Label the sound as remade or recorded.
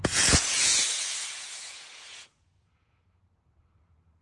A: remade